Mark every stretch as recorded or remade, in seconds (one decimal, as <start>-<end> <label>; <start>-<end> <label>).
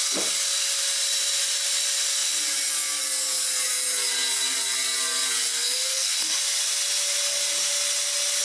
0.0-5.5 recorded; 5.5-6.4 remade; 6.4-8.4 recorded